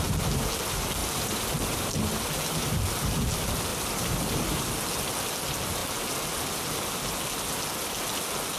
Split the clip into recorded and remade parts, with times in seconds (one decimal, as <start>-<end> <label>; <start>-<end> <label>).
0.0-1.0 recorded; 1.0-1.9 remade; 1.9-3.7 recorded; 3.7-4.6 remade; 4.6-8.6 recorded